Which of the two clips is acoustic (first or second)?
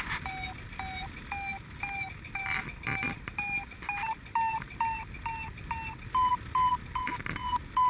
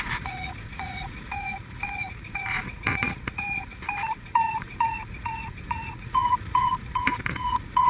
first